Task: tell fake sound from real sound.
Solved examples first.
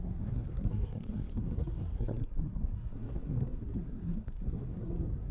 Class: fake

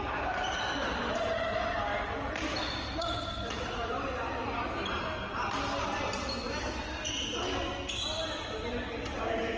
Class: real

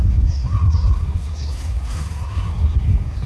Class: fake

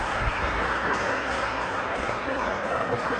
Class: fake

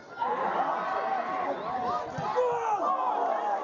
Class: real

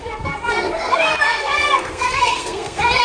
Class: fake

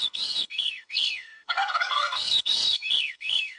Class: fake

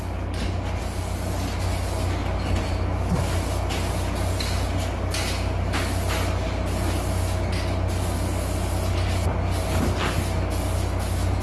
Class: real